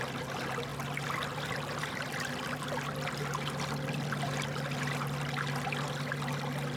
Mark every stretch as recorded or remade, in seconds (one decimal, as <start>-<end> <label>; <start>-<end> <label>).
0.0-6.8 recorded